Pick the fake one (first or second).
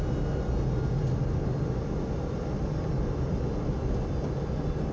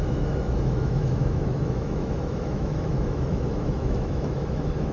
second